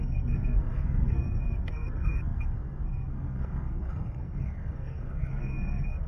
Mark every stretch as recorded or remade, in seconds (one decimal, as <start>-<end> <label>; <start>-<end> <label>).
0.0-6.1 remade